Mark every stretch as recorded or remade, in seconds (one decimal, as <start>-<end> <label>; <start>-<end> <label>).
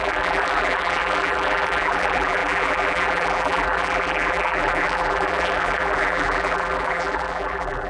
0.0-7.9 remade